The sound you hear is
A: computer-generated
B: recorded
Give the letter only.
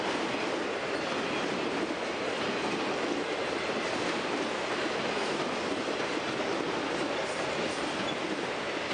B